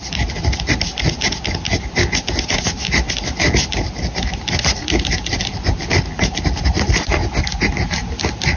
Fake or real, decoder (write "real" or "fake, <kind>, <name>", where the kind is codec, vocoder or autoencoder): real